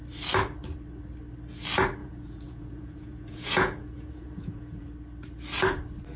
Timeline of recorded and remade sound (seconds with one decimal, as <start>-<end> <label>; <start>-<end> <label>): 0.0-2.0 recorded; 2.0-4.9 remade; 4.9-6.2 recorded